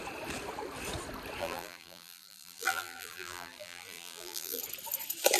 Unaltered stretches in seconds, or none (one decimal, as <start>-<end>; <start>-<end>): 0.0-1.4; 4.6-5.4